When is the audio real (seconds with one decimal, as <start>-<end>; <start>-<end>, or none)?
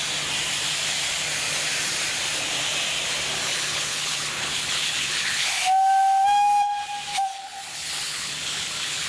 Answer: 0.0-3.5; 5.5-7.3